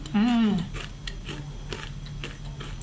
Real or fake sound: real